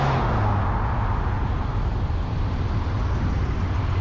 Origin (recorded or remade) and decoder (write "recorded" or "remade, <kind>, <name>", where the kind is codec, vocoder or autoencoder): recorded